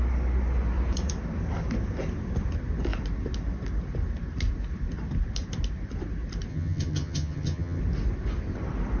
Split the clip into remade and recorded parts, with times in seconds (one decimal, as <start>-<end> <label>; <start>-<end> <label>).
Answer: 0.0-6.5 recorded; 6.5-7.8 remade; 7.8-9.0 recorded

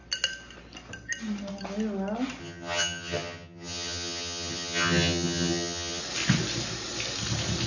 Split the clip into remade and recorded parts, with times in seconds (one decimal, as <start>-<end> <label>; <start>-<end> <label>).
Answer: 0.0-2.4 recorded; 2.4-6.0 remade; 6.0-7.7 recorded

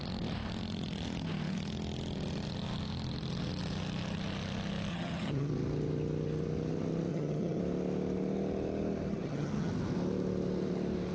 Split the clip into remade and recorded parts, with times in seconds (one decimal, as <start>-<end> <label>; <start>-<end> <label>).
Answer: 0.0-4.9 recorded; 4.9-5.5 remade; 5.5-7.1 recorded; 7.1-7.6 remade; 7.6-9.1 recorded; 9.1-9.7 remade; 9.7-11.1 recorded

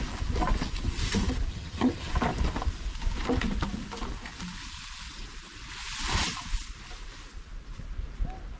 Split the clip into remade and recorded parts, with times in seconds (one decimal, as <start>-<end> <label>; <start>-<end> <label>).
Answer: 0.0-1.5 recorded; 1.5-2.1 remade; 2.1-8.6 recorded

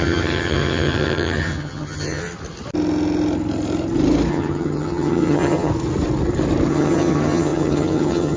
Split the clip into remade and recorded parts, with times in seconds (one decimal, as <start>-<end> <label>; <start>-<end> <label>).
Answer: 0.0-2.2 remade; 2.2-4.3 recorded; 4.3-5.7 remade; 5.7-6.7 recorded; 6.7-8.4 remade

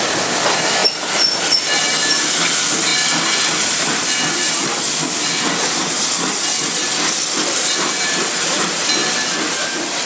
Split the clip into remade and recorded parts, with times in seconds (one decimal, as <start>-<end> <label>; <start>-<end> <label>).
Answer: 0.0-10.1 recorded